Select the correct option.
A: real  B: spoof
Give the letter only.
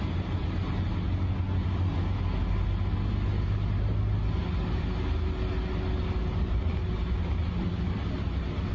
A